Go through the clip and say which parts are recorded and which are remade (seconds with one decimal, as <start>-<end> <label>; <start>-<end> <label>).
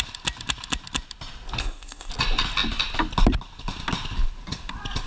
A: 0.0-1.6 recorded; 1.6-2.1 remade; 2.1-5.1 recorded